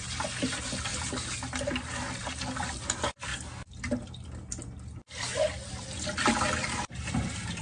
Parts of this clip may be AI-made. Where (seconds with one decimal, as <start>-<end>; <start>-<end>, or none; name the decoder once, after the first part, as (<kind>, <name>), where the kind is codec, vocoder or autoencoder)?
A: none